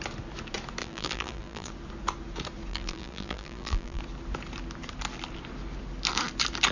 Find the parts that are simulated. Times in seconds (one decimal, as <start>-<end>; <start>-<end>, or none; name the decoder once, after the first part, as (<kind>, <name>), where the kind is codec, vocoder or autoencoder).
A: 0.8-1.7 (vocoder, BigVGAN v2); 2.7-4.0